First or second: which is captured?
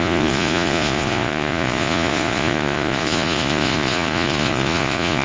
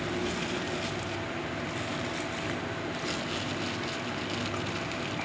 second